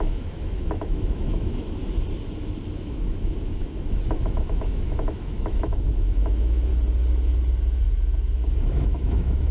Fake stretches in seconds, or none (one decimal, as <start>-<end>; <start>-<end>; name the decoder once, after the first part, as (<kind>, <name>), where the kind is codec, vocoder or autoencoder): 0.0-1.8 (autoencoder, DAC-VAE); 2.8-6.7; 8.7-9.5